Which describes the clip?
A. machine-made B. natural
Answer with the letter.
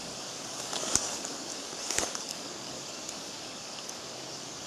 A